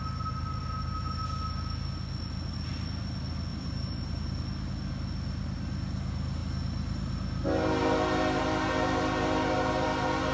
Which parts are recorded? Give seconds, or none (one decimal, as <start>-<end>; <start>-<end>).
0.0-3.5; 4.4-10.3